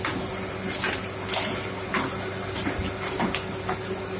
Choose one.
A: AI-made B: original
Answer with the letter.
B